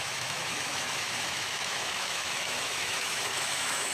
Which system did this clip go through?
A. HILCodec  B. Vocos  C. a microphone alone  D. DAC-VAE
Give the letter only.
D